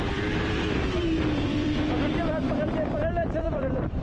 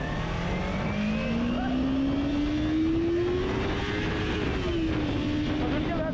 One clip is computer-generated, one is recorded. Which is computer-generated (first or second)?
first